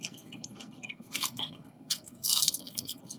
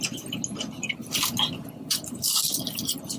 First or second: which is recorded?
second